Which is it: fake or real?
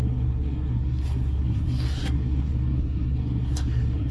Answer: fake